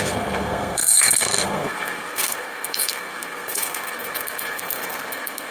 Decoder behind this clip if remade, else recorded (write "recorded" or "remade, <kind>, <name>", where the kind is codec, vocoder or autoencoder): remade, codec, SNAC